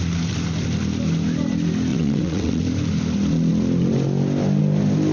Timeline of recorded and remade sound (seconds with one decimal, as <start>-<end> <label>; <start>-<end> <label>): 0.0-1.9 recorded; 1.9-2.6 remade; 2.6-5.1 recorded